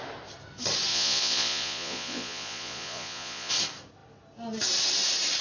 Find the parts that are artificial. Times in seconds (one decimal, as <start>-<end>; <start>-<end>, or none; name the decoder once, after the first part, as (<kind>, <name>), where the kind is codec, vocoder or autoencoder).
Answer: 0.9-3.5 (vocoder, Vocos)